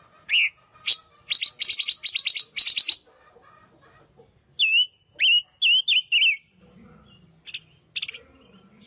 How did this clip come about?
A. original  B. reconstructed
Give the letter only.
A